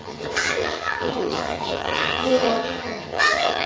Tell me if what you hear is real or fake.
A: fake